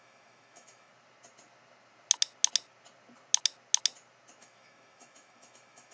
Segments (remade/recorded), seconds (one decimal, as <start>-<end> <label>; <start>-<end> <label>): 0.0-0.9 remade; 0.9-4.4 recorded; 4.4-5.9 remade